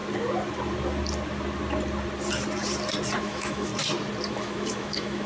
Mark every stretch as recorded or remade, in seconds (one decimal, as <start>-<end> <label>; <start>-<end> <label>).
0.0-3.2 recorded; 3.2-3.7 remade; 3.7-4.3 recorded; 4.3-5.3 remade